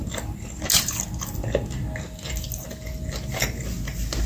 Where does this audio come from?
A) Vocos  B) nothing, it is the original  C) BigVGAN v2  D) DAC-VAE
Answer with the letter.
B